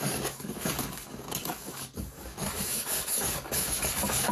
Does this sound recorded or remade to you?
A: remade